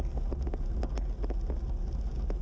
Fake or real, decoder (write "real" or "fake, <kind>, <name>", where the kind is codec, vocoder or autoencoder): real